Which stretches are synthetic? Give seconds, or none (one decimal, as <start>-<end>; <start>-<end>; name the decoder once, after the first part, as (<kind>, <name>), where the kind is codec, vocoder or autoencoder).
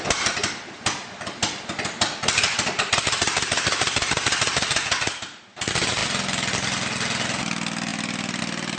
0.4-4.7 (vocoder, BigVGAN v2); 7.9-8.4